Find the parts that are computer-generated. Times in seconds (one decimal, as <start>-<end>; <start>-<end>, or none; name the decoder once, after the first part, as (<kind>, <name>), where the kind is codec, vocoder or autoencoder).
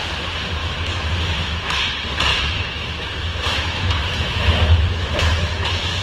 0.6-1.9 (autoencoder, DAC-VAE); 2.3-6.0